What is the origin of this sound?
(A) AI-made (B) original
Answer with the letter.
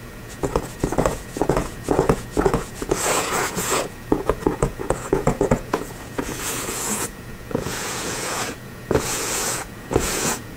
A